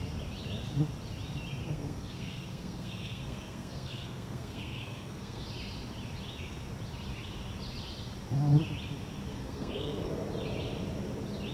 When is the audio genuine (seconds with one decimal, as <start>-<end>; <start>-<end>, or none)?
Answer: 0.0-1.6; 5.4-9.3; 10.1-11.5